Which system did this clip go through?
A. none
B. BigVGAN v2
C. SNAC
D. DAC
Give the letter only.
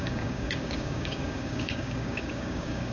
D